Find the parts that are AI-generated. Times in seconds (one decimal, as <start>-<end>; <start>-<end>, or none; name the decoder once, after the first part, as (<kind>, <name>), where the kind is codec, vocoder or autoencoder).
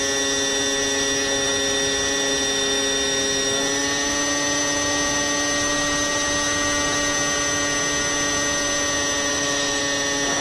9.3-9.8 (autoencoder, DAC-VAE)